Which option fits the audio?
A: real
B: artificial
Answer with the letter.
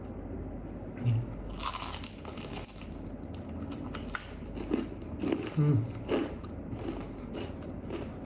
A